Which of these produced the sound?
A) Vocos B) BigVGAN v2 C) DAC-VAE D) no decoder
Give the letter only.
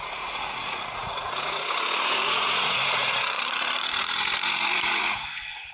A